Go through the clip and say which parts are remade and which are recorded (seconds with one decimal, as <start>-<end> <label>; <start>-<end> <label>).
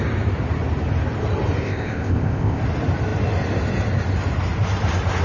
0.0-1.6 recorded; 1.6-2.6 remade; 2.6-5.2 recorded